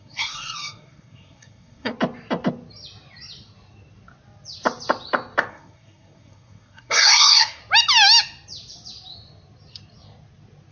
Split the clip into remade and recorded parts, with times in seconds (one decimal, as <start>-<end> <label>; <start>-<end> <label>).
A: 0.0-1.9 remade; 1.9-5.5 recorded; 5.5-7.6 remade; 7.6-10.7 recorded